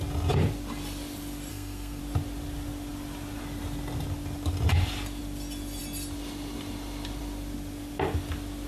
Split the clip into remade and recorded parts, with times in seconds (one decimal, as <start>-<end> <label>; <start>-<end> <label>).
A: 0.0-1.5 recorded; 1.5-2.0 remade; 2.0-8.7 recorded